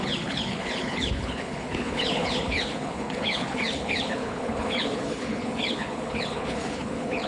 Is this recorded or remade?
remade